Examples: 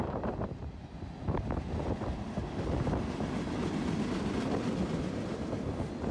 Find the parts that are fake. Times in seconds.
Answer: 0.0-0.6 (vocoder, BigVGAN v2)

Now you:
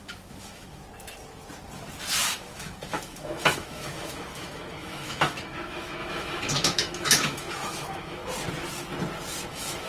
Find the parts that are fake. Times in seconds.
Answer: 0.0-0.8 (autoencoder, DAC-VAE); 2.2-8.2; 9.5-9.9

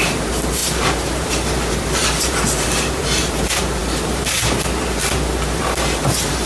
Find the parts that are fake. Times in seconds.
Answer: 0.0-6.5 (vocoder, BigVGAN v2)